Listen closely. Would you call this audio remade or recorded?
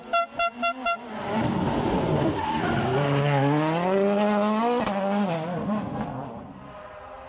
recorded